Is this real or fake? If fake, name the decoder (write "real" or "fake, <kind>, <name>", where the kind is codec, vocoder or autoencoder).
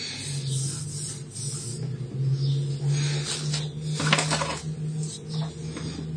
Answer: real